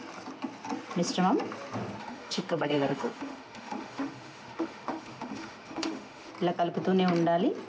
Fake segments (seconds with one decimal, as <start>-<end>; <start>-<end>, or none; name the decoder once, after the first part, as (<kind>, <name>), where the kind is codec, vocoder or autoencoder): 2.0-6.3 (autoencoder, DAC-VAE)